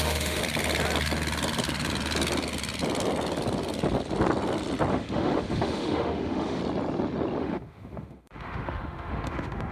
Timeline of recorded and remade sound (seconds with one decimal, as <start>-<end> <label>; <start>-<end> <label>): 0.0-0.4 remade; 0.4-4.9 recorded; 4.9-6.6 remade; 6.6-7.4 recorded; 7.4-9.7 remade